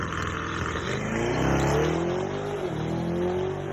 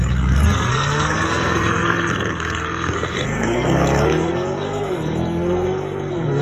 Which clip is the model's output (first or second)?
second